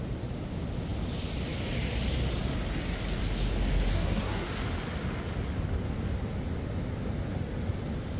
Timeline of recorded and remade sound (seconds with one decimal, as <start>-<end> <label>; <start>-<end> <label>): 0.0-3.9 recorded; 3.9-4.5 remade; 4.5-8.2 recorded